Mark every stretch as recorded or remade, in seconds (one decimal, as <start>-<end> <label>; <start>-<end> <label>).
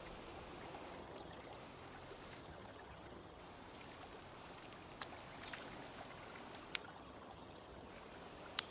0.0-1.0 recorded; 1.0-1.6 remade; 1.6-2.4 recorded; 2.4-3.4 remade; 3.4-6.8 recorded; 6.8-7.9 remade; 7.9-8.7 recorded